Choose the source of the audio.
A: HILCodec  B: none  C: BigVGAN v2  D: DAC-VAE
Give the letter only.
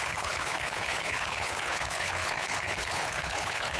A